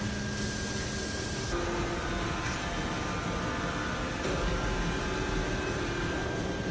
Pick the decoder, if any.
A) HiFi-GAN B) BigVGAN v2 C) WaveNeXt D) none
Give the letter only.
D